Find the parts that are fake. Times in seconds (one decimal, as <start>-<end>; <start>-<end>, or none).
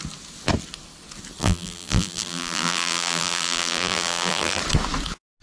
1.4-4.6